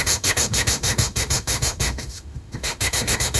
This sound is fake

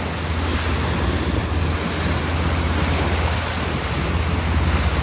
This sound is real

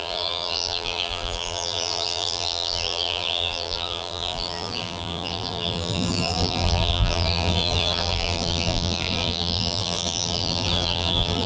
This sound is fake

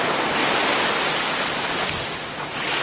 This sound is fake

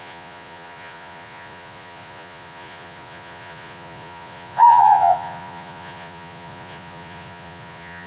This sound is fake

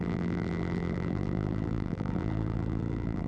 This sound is fake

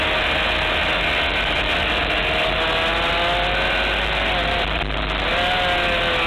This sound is real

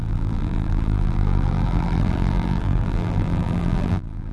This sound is fake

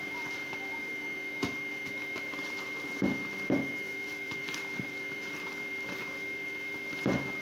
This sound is fake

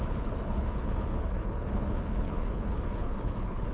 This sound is fake